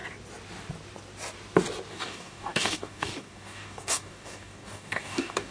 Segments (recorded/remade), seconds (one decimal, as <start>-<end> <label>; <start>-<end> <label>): 0.0-1.9 recorded; 1.9-5.5 remade

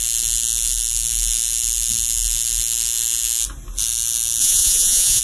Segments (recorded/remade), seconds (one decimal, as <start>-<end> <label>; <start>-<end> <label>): 0.0-4.4 recorded; 4.4-5.2 remade

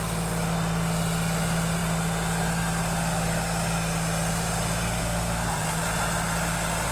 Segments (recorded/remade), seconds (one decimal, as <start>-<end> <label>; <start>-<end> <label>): 0.0-6.9 recorded

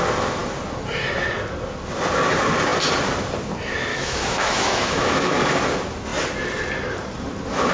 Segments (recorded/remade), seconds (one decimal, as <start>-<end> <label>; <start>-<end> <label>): 0.0-3.9 recorded; 3.9-5.4 remade; 5.4-7.7 recorded